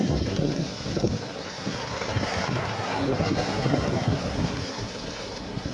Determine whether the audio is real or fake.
fake